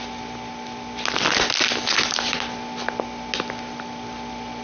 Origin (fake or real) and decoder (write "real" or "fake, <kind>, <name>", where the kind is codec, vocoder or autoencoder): real